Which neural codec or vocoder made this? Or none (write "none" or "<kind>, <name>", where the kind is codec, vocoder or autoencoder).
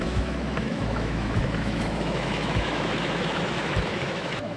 autoencoder, DAC-VAE